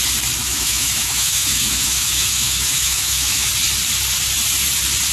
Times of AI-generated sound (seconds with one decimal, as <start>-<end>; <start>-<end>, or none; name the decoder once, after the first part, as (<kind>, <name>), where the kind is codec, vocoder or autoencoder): 0.4-3.5 (autoencoder, DAC-VAE)

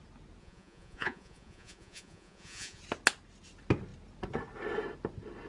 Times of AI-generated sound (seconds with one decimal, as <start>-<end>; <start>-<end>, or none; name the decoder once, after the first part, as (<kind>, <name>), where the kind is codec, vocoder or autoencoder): 0.4-2.8 (vocoder, Vocos)

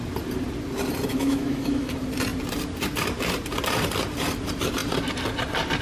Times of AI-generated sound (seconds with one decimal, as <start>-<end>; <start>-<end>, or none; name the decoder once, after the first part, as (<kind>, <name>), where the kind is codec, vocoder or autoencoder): 1.1-1.9 (autoencoder, DAC-VAE)

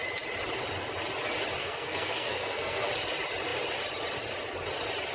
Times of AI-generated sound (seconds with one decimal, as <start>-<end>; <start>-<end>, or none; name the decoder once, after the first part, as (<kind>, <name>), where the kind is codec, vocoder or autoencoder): 1.6-2.9 (codec, SNAC)

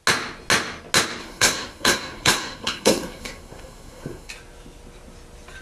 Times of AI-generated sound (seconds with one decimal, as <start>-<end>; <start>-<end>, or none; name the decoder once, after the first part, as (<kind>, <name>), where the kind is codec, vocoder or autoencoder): 1.2-4.3 (codec, SNAC)

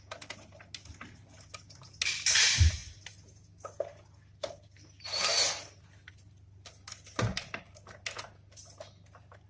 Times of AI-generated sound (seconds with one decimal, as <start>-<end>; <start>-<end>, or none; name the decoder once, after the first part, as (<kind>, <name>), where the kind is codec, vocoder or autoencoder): none

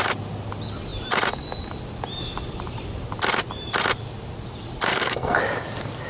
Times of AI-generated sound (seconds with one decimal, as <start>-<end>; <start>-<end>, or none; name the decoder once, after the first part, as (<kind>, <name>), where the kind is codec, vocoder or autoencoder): 4.9-5.4 (codec, SNAC)

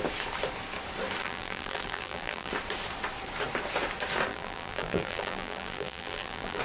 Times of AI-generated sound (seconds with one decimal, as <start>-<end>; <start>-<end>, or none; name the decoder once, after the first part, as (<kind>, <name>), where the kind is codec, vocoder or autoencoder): 1.2-2.5 (vocoder, BigVGAN v2); 4.3-6.6